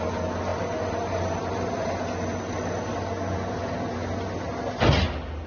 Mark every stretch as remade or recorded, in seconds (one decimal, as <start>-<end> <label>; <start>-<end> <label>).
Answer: 0.0-5.5 recorded